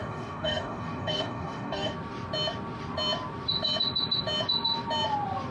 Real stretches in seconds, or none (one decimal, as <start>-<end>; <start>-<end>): 1.9-5.5